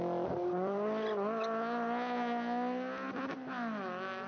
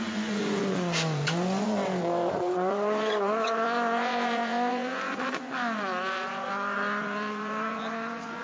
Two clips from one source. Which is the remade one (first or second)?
second